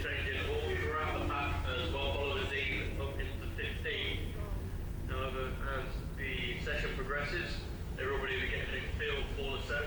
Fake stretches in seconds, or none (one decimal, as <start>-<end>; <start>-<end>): 0.0-2.4; 7.5-9.9